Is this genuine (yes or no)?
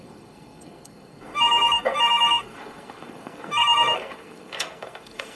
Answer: no